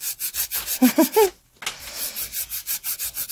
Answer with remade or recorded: recorded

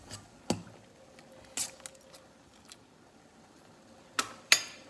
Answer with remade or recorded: recorded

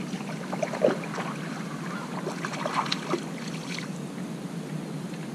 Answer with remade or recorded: recorded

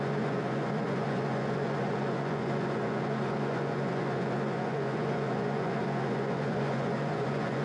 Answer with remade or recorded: remade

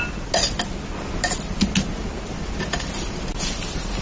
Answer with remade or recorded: recorded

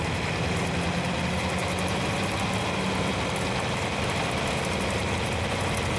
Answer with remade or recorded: recorded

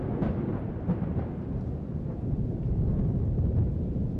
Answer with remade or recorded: recorded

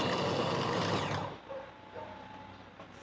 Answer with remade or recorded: recorded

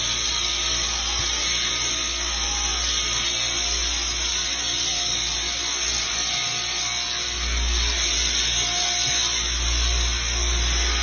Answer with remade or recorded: recorded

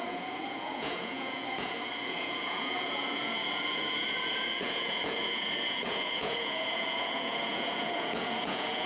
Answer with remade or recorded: remade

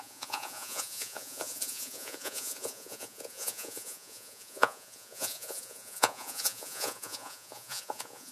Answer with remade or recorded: remade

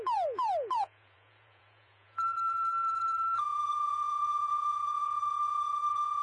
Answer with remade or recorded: remade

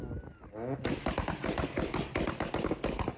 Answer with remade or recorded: recorded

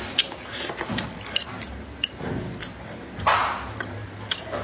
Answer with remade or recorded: recorded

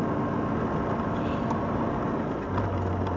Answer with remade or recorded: recorded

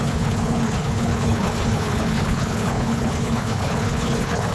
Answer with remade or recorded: remade